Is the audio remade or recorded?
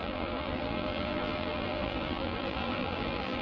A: remade